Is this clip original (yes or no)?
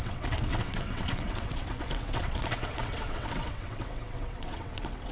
no